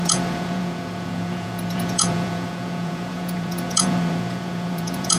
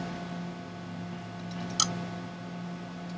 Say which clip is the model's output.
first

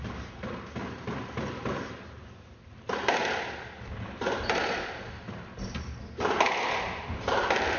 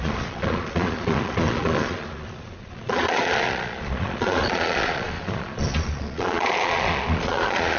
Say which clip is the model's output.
second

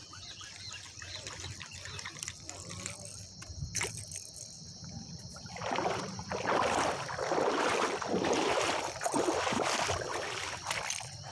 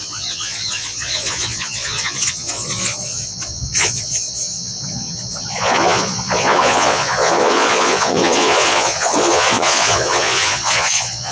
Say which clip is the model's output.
second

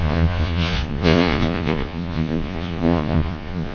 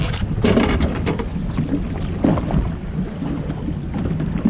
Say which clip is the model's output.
first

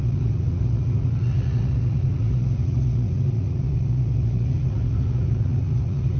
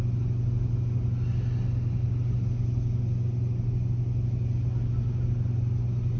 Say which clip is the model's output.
first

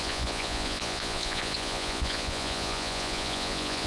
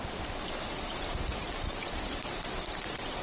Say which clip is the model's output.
first